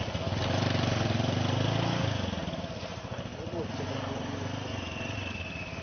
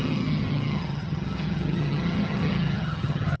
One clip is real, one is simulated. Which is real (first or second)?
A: first